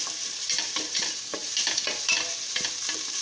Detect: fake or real fake